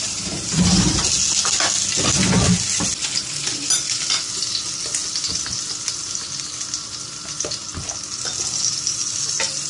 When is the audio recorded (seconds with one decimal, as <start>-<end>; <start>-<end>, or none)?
0.0-9.7

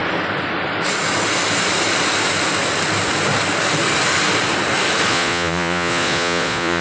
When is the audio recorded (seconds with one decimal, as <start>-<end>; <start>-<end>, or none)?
0.0-5.1